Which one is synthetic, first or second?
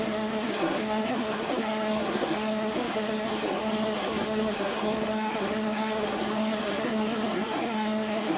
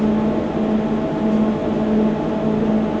first